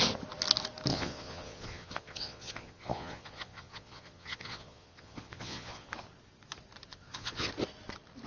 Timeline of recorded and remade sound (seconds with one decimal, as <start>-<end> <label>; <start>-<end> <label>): 0.0-0.9 recorded; 0.9-5.9 remade; 5.9-6.9 recorded; 6.9-7.5 remade; 7.5-8.3 recorded

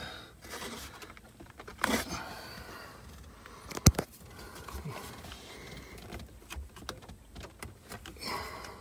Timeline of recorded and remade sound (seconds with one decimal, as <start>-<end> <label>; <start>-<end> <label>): 0.0-8.8 recorded